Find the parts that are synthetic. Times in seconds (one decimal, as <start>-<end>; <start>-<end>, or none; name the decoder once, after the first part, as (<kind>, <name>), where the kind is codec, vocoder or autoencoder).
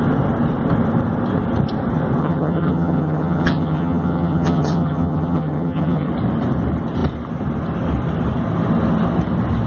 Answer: 2.2-6.1 (vocoder, HiFi-GAN)